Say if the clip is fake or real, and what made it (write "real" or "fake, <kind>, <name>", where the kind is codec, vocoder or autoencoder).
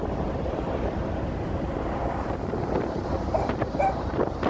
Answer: fake, vocoder, BigVGAN v2